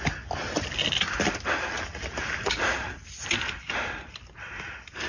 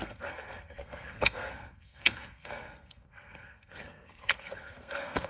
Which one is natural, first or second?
first